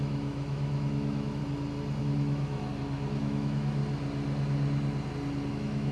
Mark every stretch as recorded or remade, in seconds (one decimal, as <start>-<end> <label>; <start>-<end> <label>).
0.0-1.4 remade; 1.4-2.0 recorded; 2.0-2.7 remade; 2.7-3.2 recorded; 3.2-3.8 remade; 3.8-5.5 recorded; 5.5-5.9 remade